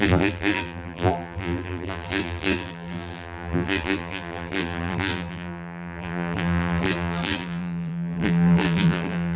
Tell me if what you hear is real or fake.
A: fake